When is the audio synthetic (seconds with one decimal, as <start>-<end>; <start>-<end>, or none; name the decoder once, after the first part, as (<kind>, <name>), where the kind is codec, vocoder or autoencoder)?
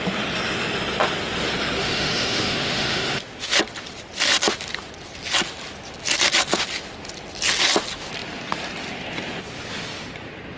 1.8-3.6 (autoencoder, DAC-VAE)